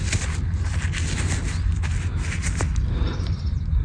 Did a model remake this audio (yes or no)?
no